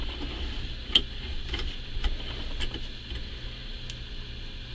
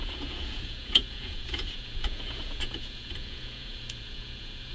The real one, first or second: first